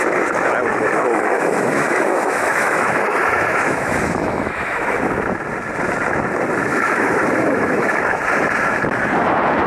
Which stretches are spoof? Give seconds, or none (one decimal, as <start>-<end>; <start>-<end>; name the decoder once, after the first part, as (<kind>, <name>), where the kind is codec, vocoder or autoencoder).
0.7-5.1 (autoencoder, DAC-VAE); 6.7-8.2